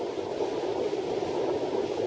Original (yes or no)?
yes